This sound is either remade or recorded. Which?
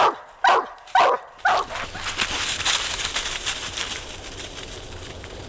recorded